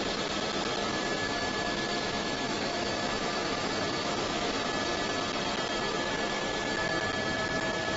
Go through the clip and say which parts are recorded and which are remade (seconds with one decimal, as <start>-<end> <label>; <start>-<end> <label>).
0.0-0.8 recorded; 0.8-4.7 remade; 4.7-5.9 recorded; 5.9-6.4 remade; 6.4-8.0 recorded